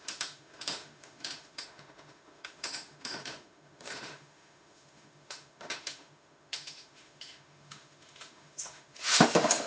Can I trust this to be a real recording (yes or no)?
no